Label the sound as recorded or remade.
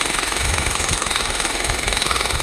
remade